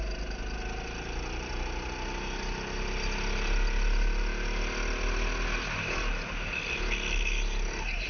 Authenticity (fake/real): real